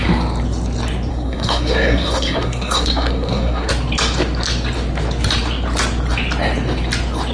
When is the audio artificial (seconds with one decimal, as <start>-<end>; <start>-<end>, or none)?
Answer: 1.1-3.7